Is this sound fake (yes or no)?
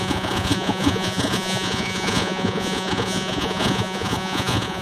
yes